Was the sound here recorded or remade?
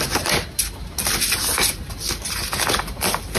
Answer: recorded